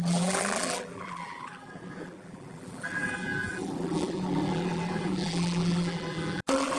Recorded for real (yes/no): no